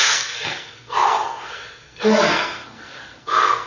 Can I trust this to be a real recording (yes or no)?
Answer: no